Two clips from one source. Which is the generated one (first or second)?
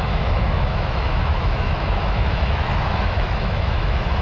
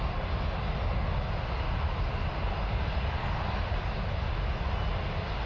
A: first